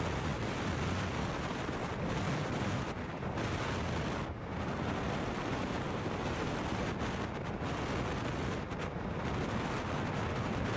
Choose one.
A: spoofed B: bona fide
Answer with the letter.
B